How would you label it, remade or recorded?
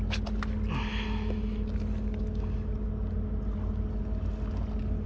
recorded